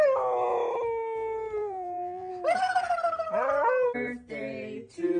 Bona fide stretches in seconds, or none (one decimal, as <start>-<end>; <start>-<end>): 0.0-1.6; 2.3-5.2